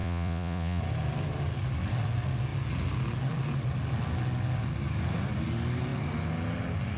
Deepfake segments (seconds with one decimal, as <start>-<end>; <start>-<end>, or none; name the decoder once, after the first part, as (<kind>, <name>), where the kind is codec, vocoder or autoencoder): 0.0-0.8 (vocoder, Vocos)